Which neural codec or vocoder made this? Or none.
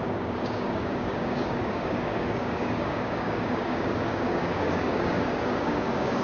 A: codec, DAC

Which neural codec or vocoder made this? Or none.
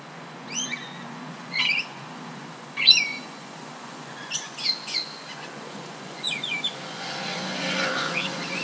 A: vocoder, Vocos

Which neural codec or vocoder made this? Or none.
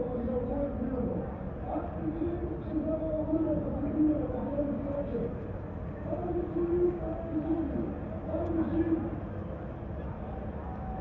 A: none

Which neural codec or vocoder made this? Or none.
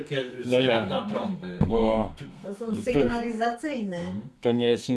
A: codec, SNAC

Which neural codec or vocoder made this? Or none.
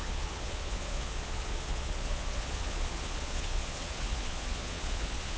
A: vocoder, Vocos